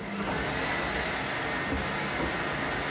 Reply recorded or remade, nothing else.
recorded